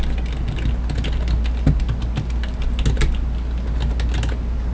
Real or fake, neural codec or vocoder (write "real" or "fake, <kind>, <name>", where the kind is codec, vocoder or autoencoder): real